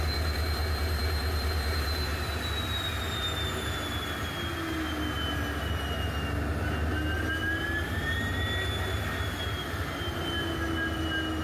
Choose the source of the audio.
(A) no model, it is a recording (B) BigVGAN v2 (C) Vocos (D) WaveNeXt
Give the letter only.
A